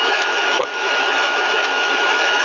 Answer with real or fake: fake